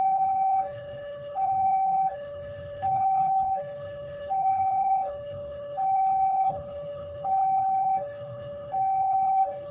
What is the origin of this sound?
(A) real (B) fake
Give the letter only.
B